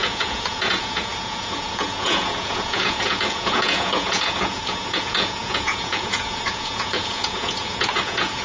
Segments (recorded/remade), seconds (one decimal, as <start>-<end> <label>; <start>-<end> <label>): 0.0-8.4 remade